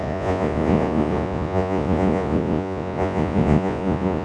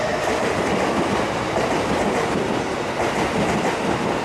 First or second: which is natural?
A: second